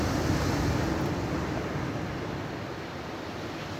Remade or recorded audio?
recorded